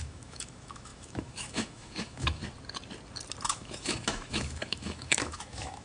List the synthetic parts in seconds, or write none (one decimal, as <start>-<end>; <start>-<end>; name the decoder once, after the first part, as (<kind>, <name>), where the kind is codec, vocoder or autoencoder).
0.0-2.4 (autoencoder, DAC-VAE); 3.5-5.8